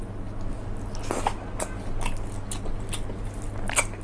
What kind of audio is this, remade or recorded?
recorded